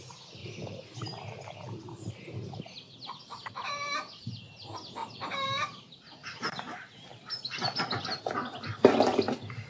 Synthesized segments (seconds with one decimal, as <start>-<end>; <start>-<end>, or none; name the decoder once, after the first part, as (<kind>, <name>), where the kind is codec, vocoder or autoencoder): 0.4-2.6 (vocoder, BigVGAN v2); 5.0-6.9